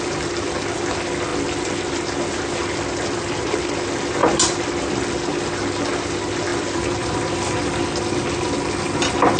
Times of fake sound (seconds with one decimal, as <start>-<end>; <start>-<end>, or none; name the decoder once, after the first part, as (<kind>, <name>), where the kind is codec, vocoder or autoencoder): none